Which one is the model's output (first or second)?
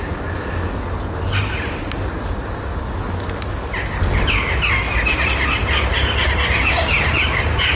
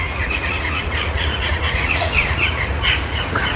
second